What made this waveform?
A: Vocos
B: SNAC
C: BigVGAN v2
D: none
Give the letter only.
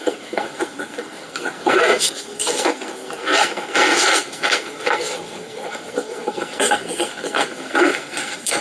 B